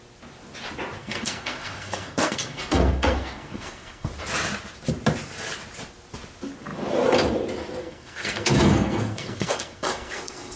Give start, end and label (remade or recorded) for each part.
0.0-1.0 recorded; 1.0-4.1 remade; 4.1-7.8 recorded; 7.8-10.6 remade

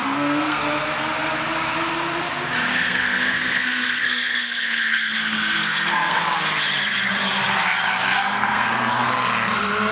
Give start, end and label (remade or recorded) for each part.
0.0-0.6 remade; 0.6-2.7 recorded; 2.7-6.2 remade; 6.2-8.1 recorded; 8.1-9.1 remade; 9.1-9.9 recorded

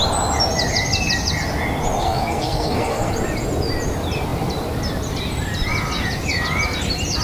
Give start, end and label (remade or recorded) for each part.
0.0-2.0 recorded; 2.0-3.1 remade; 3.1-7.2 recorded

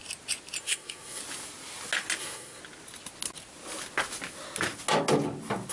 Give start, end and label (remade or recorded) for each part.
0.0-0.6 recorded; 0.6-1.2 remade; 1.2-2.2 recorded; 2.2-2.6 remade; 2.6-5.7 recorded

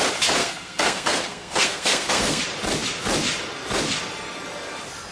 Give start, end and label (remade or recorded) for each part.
0.0-0.4 recorded; 0.4-2.4 remade; 2.4-5.1 recorded